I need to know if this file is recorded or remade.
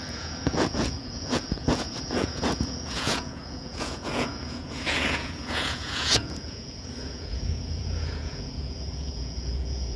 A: remade